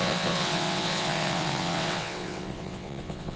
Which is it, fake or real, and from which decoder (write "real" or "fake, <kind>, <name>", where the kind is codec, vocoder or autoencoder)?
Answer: fake, vocoder, WaveNeXt